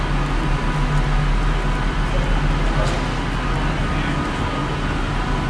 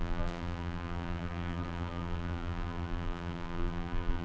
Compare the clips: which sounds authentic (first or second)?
first